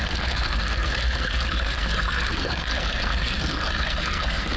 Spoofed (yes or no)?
yes